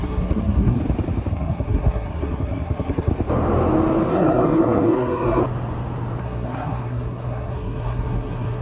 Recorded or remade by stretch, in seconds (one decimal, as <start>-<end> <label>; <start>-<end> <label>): 0.0-0.8 remade; 0.8-1.3 recorded; 1.3-3.1 remade; 3.1-4.1 recorded; 4.1-5.4 remade; 5.4-6.2 recorded; 6.2-8.6 remade